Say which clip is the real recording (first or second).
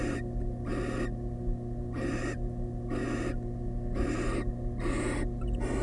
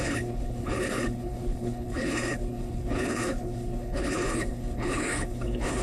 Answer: first